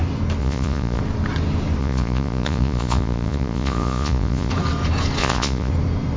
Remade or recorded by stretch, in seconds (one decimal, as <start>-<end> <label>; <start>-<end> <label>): 0.0-0.4 recorded; 0.4-1.0 remade; 1.0-1.8 recorded; 1.8-4.5 remade; 4.5-5.2 recorded; 5.2-5.7 remade; 5.7-6.2 recorded